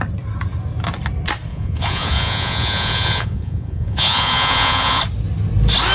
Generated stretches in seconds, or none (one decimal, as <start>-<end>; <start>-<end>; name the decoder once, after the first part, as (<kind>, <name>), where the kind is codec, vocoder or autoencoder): 1.5-5.0 (vocoder, Vocos)